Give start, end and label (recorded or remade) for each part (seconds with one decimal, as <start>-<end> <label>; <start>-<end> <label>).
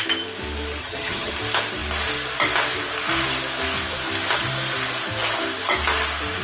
0.0-0.8 recorded; 0.8-1.3 remade; 1.3-6.4 recorded